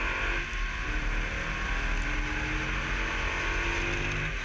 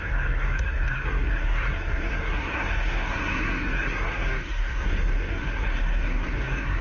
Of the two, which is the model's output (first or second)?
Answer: second